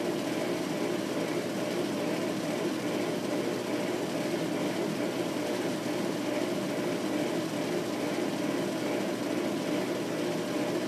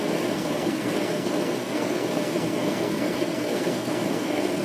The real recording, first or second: first